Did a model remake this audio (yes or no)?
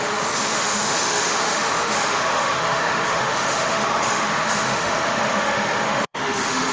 yes